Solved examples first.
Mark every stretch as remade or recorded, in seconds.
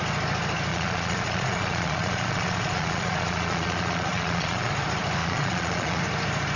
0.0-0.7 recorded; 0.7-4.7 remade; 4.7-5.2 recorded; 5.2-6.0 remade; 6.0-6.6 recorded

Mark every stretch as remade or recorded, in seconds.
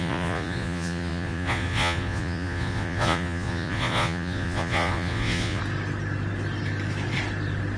0.0-5.6 remade; 5.6-7.8 recorded